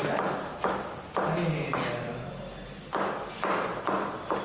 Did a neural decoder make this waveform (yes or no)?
no